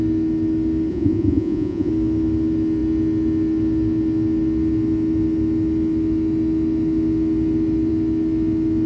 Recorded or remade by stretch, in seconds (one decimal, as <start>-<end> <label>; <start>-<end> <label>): 0.0-0.9 recorded; 0.9-1.9 remade; 1.9-8.9 recorded